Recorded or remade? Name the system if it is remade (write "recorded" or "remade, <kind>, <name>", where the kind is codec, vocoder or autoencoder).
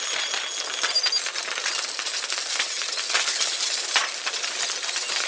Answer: recorded